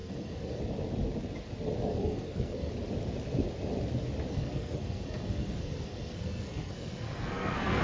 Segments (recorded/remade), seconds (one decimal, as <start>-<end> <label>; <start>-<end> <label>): 0.0-0.6 remade; 0.6-1.9 recorded; 1.9-2.7 remade; 2.7-4.3 recorded; 4.3-7.8 remade

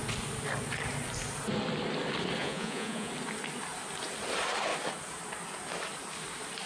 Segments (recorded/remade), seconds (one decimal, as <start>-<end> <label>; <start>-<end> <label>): 0.0-2.4 recorded; 2.4-3.1 remade; 3.1-6.7 recorded

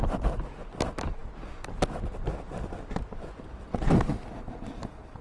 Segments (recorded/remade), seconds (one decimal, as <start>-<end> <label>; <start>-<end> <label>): 0.0-5.2 recorded

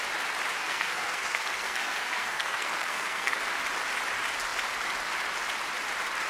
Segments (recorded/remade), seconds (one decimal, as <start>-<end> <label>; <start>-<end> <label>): 0.0-0.6 recorded; 0.6-3.4 remade; 3.4-6.3 recorded

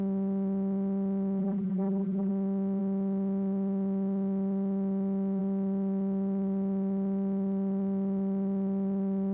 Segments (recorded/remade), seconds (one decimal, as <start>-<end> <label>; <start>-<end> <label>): 0.0-1.4 recorded; 1.4-2.3 remade; 2.3-9.3 recorded